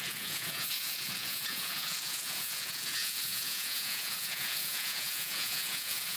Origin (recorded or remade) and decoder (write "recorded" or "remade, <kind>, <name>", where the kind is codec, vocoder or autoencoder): remade, vocoder, Vocos